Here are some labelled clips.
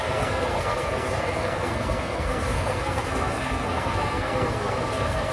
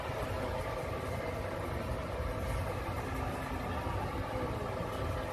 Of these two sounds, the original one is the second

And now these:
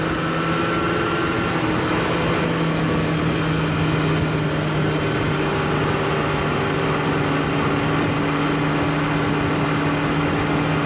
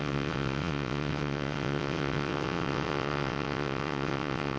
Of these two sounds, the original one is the first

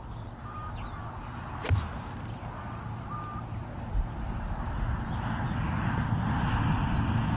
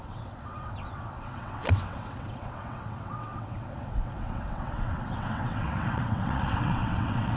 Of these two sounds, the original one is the first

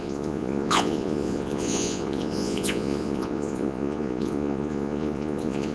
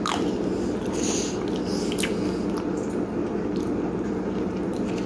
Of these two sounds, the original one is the second